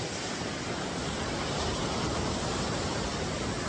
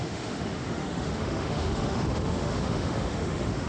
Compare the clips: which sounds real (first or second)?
first